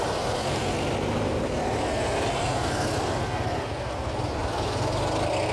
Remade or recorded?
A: recorded